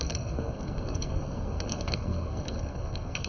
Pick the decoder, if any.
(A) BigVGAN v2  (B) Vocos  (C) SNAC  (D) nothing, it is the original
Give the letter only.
C